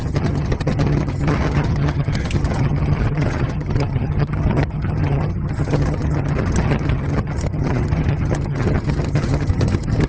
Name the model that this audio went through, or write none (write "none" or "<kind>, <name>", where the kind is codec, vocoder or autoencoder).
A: vocoder, HiFi-GAN